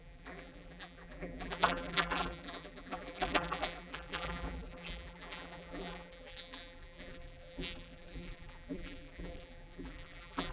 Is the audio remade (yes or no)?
yes